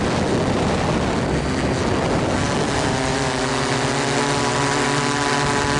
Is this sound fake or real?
real